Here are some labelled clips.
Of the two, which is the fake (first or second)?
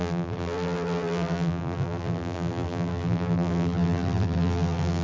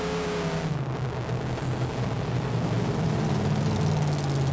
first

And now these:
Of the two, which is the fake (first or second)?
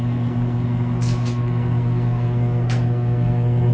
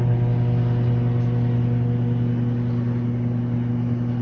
first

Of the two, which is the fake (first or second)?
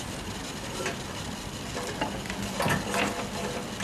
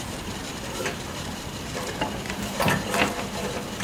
second